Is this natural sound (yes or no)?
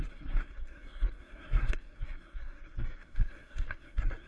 no